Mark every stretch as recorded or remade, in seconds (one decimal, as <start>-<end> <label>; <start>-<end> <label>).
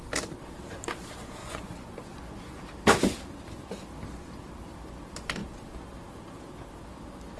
0.0-1.4 recorded; 1.4-2.6 remade; 2.6-7.4 recorded